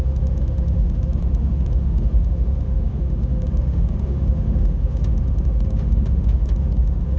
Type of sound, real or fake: fake